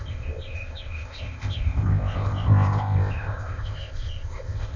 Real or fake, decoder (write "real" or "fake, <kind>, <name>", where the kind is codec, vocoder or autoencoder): fake, codec, ZipCodec